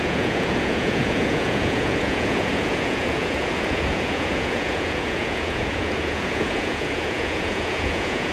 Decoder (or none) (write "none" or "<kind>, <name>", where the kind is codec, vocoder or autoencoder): vocoder, Vocos